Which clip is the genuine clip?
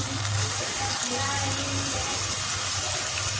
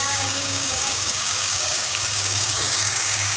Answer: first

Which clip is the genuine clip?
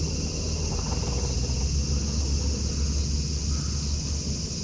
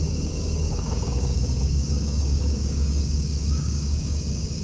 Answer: first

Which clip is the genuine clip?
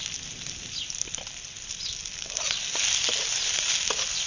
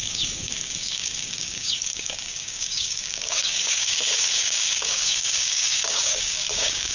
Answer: first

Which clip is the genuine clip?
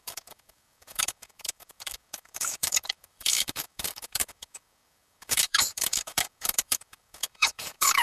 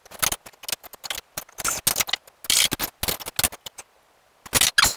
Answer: second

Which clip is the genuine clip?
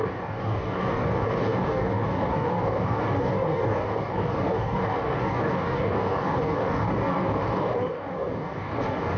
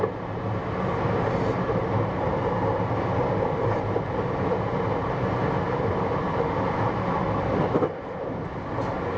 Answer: second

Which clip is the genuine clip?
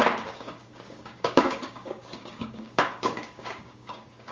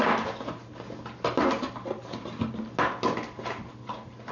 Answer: second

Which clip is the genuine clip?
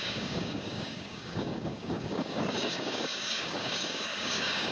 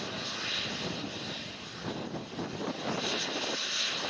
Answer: second